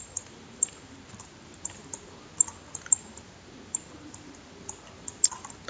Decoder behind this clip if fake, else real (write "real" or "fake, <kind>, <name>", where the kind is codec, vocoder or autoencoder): real